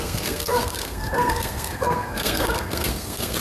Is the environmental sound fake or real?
fake